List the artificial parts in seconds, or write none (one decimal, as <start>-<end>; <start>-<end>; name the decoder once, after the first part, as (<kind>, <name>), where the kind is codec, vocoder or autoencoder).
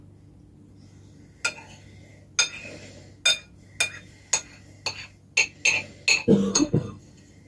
6.5-7.0 (codec, SNAC)